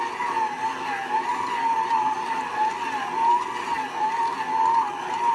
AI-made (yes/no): no